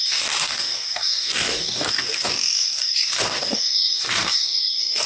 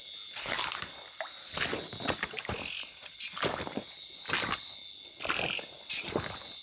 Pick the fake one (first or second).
first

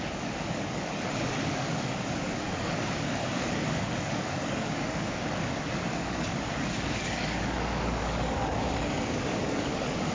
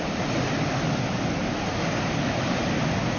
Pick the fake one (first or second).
first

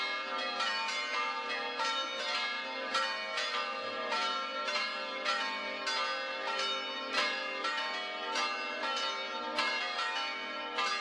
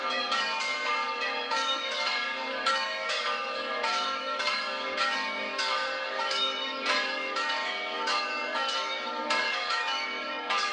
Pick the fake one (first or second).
second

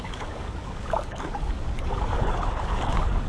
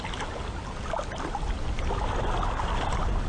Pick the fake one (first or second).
first